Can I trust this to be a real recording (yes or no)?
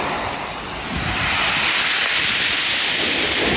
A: no